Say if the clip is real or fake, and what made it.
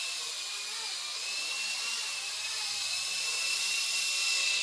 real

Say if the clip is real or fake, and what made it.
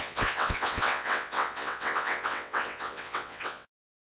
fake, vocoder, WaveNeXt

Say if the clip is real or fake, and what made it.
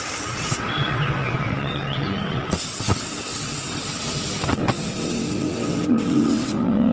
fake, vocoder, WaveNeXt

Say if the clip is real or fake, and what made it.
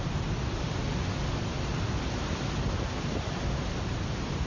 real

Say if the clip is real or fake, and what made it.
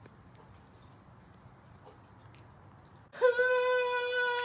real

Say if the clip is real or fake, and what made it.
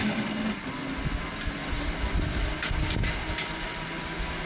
real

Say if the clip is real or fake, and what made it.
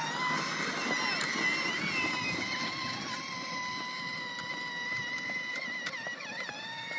real